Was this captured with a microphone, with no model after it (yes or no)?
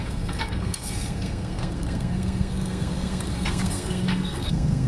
no